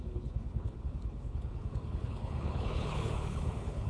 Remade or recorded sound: remade